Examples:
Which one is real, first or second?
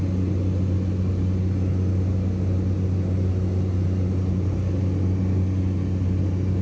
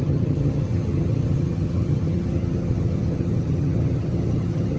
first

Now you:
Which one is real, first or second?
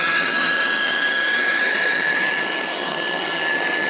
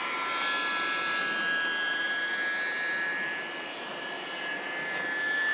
second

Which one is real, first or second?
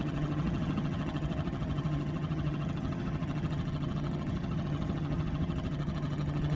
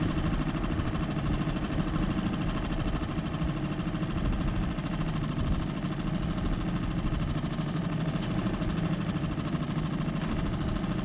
second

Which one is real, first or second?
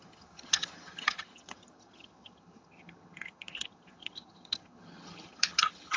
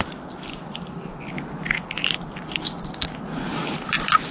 second